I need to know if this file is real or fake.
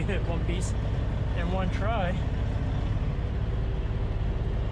real